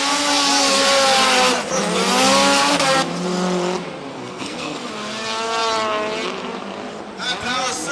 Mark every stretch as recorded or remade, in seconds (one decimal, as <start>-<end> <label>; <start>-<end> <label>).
0.0-4.1 recorded; 4.1-4.9 remade; 4.9-7.9 recorded